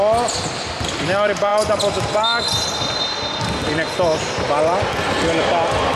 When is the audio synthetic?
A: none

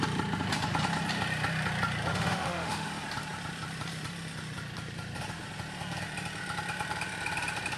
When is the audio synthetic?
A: 2.1-2.9

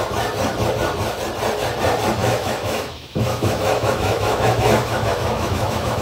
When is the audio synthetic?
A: 2.2-6.0

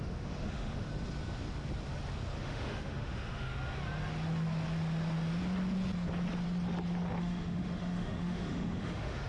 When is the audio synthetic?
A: 0.0-0.9; 2.4-3.5; 7.2-9.3

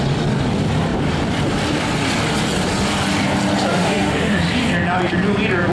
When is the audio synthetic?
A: 3.7-4.4

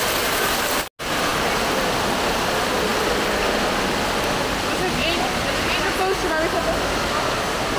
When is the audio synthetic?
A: none

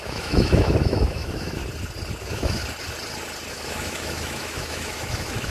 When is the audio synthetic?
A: 0.0-1.6; 2.2-2.6; 3.5-5.5